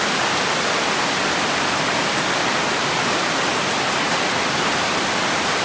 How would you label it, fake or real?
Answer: real